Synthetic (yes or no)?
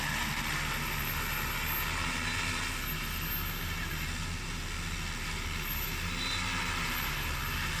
no